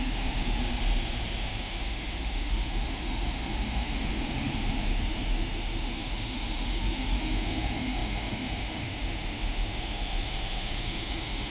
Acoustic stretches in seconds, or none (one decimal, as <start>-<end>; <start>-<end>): 0.6-1.4